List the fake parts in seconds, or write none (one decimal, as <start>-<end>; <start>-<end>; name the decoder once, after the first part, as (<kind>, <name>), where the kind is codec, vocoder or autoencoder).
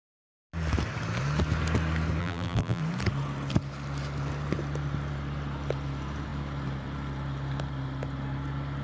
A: 2.2-2.8 (vocoder, BigVGAN v2)